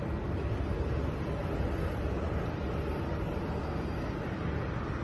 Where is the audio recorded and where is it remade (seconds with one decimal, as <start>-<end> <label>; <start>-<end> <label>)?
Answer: 0.0-5.0 recorded